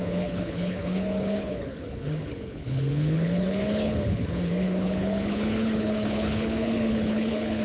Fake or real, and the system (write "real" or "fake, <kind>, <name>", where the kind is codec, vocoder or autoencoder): fake, codec, HILCodec